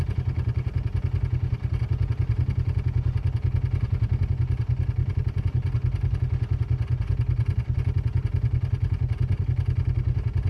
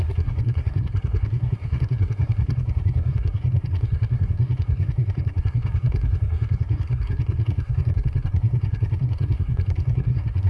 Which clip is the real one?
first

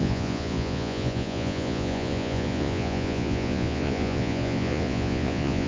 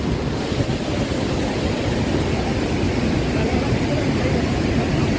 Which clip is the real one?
second